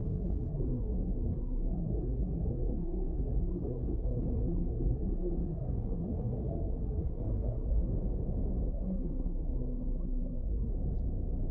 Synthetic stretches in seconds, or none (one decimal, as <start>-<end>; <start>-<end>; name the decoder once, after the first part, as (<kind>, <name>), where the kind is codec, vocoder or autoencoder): 0.0-7.9 (codec, SNAC); 8.7-10.7